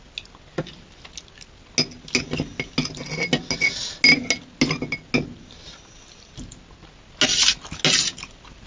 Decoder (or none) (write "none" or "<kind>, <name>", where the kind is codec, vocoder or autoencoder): none